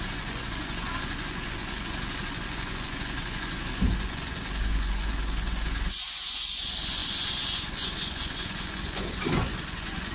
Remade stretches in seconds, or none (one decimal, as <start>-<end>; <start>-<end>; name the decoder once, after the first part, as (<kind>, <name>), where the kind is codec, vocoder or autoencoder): 0.0-10.1 (vocoder, Vocos)